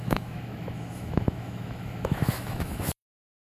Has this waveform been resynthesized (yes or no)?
yes